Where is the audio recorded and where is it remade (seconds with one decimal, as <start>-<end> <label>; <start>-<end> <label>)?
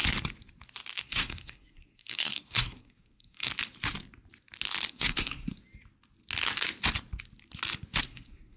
0.0-1.0 recorded; 1.0-3.5 remade; 3.5-4.9 recorded; 4.9-5.6 remade; 5.6-8.0 recorded; 8.0-8.6 remade